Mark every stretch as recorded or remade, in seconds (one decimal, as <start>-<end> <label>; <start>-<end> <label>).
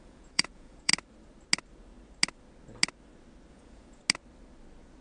0.0-0.9 remade; 0.9-3.5 recorded; 3.5-4.0 remade; 4.0-5.0 recorded